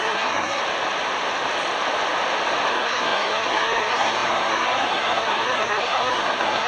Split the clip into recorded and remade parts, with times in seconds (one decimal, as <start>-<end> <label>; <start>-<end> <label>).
0.0-0.6 remade; 0.6-2.7 recorded; 2.7-6.7 remade